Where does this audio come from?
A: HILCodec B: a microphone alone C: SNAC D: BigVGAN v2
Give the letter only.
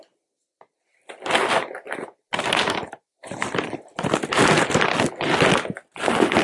B